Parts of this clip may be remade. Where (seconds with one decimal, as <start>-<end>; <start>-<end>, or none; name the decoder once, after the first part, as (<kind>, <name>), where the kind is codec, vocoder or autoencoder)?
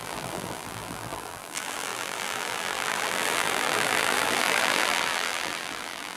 0.0-6.2 (vocoder, BigVGAN v2)